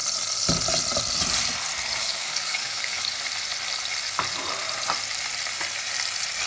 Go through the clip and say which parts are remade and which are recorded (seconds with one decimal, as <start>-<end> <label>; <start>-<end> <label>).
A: 0.0-2.0 recorded; 2.0-3.1 remade; 3.1-6.5 recorded